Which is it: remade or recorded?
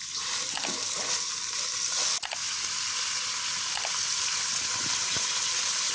recorded